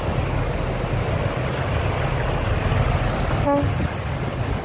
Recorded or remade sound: recorded